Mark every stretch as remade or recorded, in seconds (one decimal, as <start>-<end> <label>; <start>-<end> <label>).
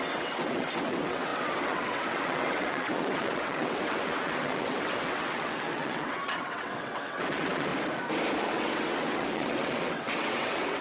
0.0-7.7 remade; 7.7-8.4 recorded; 8.4-10.8 remade